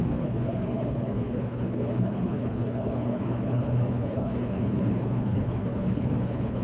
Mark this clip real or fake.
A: fake